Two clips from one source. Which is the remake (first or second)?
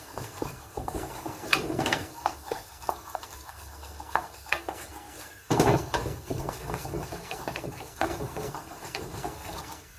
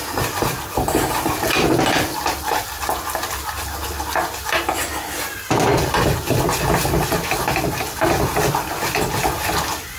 first